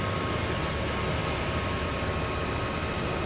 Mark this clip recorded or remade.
recorded